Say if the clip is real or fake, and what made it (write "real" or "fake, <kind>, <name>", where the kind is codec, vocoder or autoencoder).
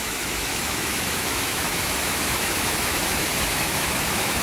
fake, autoencoder, DAC-VAE